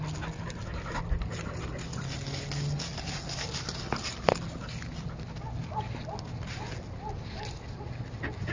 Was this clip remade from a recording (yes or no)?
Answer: no